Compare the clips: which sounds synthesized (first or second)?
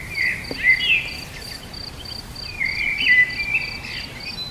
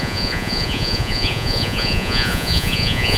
second